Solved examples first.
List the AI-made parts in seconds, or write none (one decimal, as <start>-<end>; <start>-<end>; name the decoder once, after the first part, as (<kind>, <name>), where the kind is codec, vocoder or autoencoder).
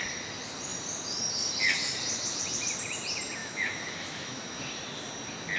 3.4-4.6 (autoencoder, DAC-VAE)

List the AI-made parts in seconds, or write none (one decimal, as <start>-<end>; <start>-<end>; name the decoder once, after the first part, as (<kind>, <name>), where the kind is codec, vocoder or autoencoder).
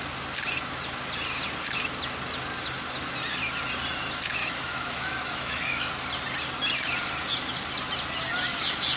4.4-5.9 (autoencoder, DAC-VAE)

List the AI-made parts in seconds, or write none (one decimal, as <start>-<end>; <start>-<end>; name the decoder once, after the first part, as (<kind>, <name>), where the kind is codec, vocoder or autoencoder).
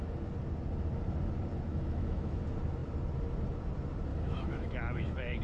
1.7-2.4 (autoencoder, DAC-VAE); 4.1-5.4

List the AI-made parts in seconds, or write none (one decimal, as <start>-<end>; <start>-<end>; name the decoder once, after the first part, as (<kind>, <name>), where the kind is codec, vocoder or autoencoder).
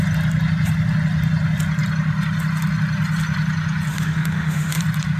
3.9-4.8 (autoencoder, DAC-VAE)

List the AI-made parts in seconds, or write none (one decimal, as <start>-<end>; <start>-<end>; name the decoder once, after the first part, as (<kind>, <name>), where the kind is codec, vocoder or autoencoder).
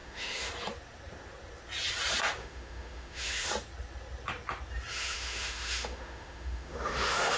0.0-0.5 (autoencoder, DAC-VAE); 2.4-3.5; 4.9-7.4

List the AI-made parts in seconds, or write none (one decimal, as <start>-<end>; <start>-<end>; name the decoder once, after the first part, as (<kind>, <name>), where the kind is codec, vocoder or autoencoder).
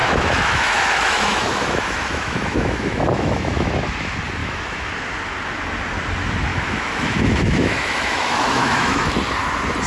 0.0-3.7 (autoencoder, DAC-VAE); 4.4-4.9; 6.5-9.1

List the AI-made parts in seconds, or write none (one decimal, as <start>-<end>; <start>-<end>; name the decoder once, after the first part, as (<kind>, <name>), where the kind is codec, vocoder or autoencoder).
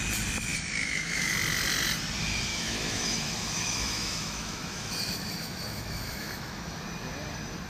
0.5-1.3 (autoencoder, DAC-VAE); 2.5-6.8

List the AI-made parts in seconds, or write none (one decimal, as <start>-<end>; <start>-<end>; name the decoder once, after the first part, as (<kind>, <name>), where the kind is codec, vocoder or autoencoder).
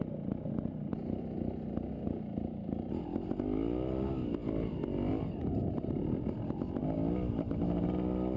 none